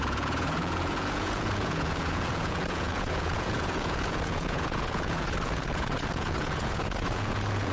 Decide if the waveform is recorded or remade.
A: remade